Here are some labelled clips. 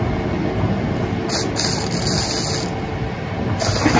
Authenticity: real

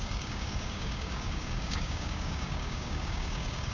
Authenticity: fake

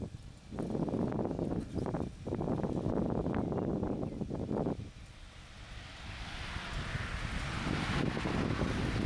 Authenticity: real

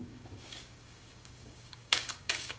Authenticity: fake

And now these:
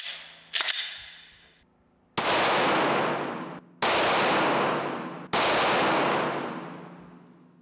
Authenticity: real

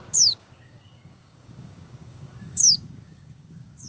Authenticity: fake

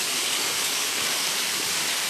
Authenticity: fake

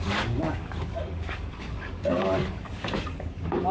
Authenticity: fake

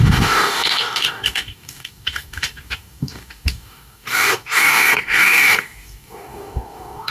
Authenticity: fake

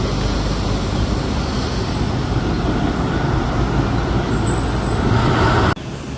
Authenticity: real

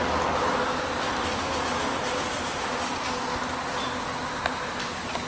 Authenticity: real